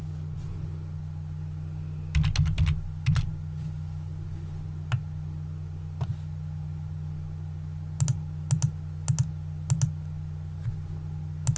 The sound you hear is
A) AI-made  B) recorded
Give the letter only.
B